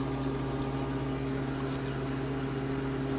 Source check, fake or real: real